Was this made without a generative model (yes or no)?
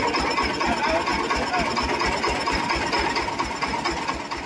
yes